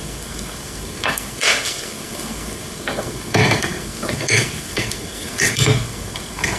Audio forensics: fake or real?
fake